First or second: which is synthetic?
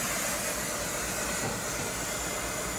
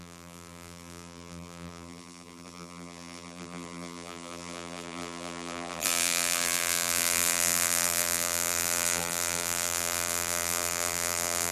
second